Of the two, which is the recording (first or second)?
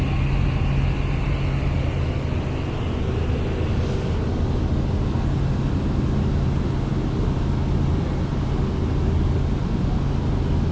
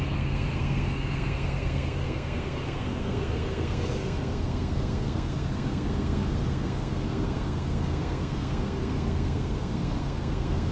first